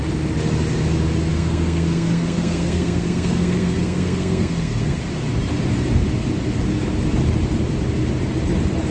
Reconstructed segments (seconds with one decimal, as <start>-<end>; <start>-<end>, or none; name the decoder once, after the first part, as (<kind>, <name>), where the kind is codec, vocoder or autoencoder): 1.3-5.0 (codec, SNAC)